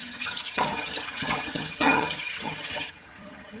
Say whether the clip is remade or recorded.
remade